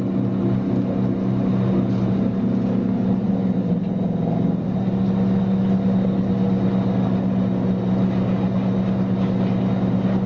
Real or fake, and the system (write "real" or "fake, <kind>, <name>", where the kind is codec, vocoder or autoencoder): real